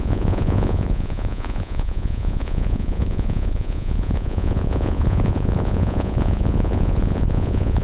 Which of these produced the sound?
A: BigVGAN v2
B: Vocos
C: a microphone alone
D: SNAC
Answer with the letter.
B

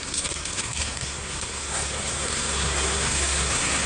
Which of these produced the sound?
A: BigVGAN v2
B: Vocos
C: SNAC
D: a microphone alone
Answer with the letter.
C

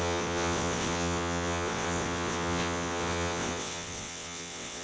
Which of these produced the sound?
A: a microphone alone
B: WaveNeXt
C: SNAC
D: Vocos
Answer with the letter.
B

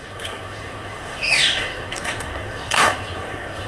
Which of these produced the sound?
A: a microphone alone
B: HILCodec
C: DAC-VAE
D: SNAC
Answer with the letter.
D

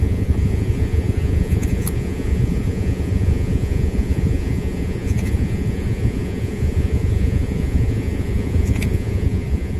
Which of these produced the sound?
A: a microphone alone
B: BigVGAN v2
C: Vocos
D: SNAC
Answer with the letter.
C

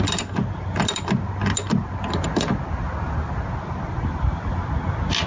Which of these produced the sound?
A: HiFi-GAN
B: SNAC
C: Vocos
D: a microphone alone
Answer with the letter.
D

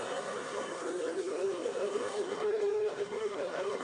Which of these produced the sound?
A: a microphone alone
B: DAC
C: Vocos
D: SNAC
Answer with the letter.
D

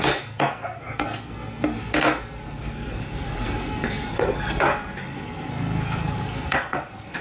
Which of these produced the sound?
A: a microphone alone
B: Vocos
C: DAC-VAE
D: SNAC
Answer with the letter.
D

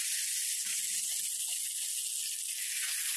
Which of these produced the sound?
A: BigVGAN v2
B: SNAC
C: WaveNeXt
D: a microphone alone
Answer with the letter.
D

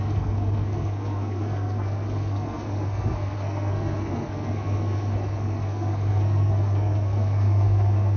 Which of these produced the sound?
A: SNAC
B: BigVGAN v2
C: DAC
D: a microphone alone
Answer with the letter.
A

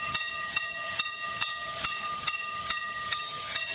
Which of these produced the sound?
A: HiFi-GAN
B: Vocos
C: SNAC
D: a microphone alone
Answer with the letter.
A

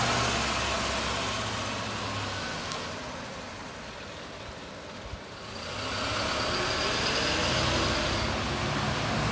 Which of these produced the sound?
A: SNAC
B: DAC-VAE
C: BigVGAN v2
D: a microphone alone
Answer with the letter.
D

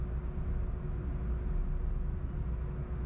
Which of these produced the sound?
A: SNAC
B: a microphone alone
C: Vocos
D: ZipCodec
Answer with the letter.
B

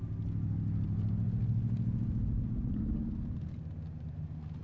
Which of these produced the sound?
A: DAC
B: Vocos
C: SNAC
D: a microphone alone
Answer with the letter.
D